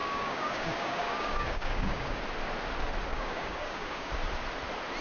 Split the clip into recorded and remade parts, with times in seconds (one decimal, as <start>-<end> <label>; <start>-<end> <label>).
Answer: 0.0-2.2 remade; 2.2-3.1 recorded; 3.1-4.1 remade; 4.1-5.0 recorded